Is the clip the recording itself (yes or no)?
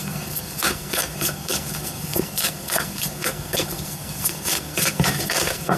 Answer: no